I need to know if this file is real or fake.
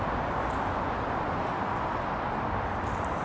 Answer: real